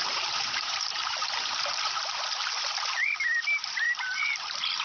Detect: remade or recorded remade